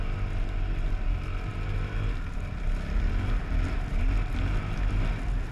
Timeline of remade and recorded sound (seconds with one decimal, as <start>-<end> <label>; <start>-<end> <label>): 0.0-5.5 recorded